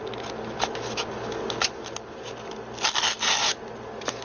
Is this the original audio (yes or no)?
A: yes